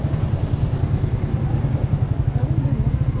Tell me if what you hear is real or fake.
real